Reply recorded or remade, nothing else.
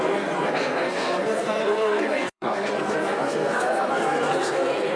remade